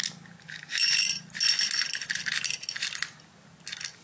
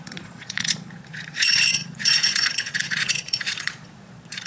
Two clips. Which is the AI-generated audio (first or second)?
second